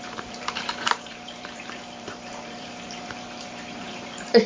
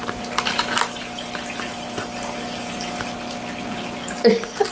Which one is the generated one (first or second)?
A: first